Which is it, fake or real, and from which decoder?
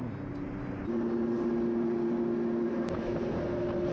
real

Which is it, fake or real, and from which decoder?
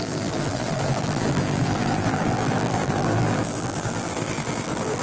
fake, vocoder, BigVGAN v2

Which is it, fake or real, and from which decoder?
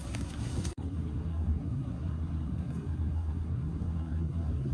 fake, codec, SNAC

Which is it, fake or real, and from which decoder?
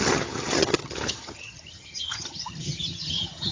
fake, vocoder, HiFi-GAN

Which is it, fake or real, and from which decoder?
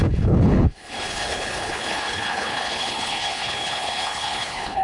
fake, codec, HILCodec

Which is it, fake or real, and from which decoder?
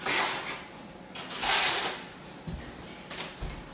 real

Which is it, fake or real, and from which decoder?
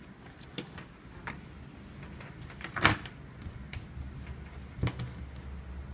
real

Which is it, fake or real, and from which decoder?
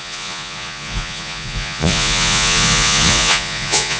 fake, vocoder, Vocos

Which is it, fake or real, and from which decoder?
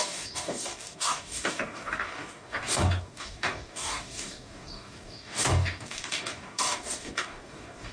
fake, codec, DAC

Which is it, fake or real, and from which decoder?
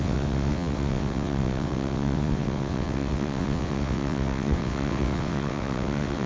fake, vocoder, WaveNeXt